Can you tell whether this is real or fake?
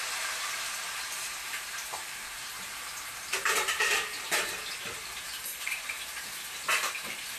fake